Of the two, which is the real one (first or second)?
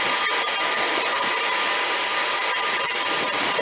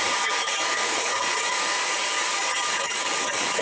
first